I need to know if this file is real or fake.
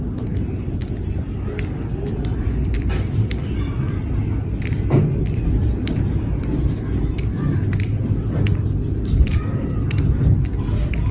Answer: real